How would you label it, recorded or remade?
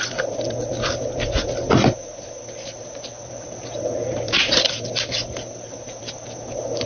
recorded